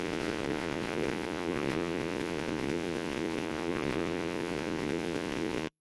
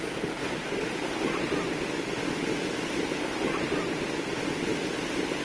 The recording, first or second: second